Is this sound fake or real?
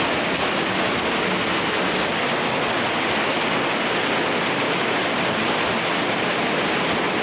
real